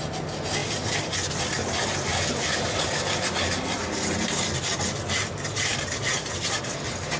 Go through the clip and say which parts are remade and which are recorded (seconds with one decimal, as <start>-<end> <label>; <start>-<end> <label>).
0.0-0.6 recorded; 0.6-1.1 remade; 1.1-2.1 recorded; 2.1-3.0 remade; 3.0-5.7 recorded; 5.7-6.3 remade; 6.3-7.2 recorded